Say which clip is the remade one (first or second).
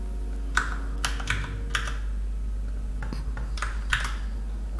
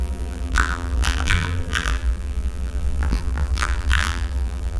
second